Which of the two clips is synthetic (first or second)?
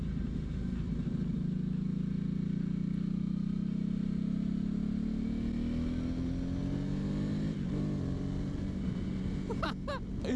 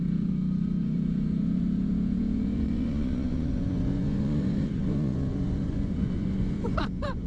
second